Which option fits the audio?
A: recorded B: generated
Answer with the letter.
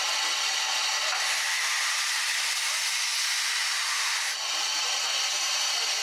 A